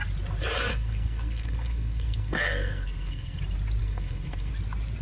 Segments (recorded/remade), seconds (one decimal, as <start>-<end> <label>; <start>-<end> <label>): 0.0-0.7 recorded; 0.7-3.4 remade; 3.4-3.8 recorded; 3.8-4.5 remade; 4.5-5.0 recorded